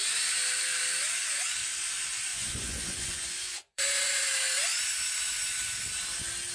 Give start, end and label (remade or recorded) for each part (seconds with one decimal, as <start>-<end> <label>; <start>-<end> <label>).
0.0-2.3 recorded; 2.3-4.2 remade; 4.2-6.5 recorded